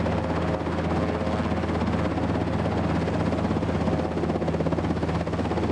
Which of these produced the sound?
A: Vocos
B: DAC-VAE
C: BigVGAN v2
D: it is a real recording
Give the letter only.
D